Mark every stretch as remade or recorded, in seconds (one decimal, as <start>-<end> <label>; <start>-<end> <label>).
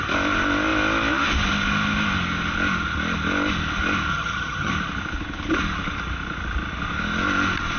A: 0.0-4.1 recorded; 4.1-4.7 remade; 4.7-7.8 recorded